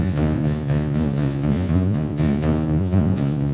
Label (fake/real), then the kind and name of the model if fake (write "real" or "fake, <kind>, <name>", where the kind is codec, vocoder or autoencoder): fake, vocoder, Vocos